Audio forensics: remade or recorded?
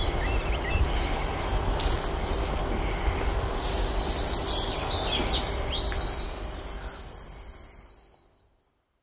recorded